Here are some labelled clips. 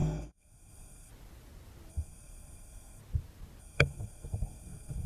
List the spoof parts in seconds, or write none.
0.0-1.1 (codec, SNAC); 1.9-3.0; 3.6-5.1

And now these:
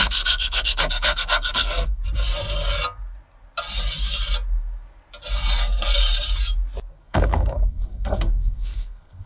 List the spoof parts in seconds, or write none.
0.0-2.0 (codec, SNAC); 7.0-9.3

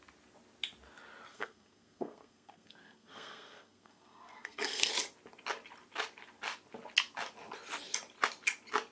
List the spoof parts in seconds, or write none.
1.3-4.9 (codec, SNAC)

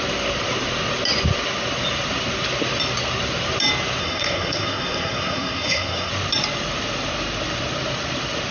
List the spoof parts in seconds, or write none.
4.0-6.1 (codec, SNAC)

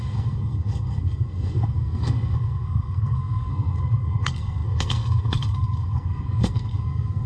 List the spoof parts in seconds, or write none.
0.0-7.3 (codec, SNAC)

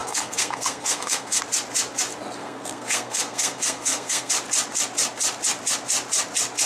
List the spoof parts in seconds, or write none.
0.0-1.4 (codec, SNAC); 2.4-4.3

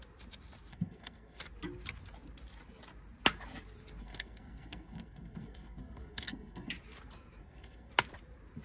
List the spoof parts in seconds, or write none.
0.7-1.4 (codec, SNAC); 4.0-6.7; 7.4-7.9